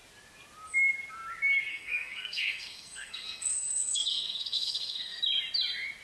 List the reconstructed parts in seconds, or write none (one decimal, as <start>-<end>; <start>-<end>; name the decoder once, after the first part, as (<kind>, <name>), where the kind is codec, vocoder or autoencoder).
1.7-5.2 (codec, SNAC)